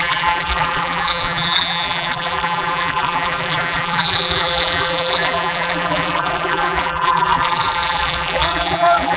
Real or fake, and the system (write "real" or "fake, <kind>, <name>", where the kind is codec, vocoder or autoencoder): fake, vocoder, BigVGAN v2